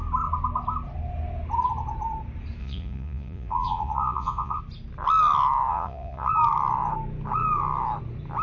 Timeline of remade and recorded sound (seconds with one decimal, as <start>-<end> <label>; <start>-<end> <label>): 0.0-2.6 recorded; 2.6-4.6 remade; 4.6-5.7 recorded; 5.7-6.3 remade; 6.3-8.4 recorded